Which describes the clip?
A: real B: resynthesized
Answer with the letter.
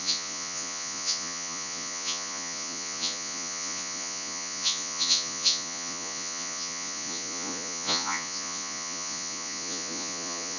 B